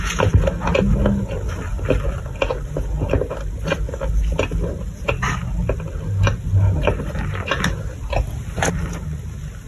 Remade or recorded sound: recorded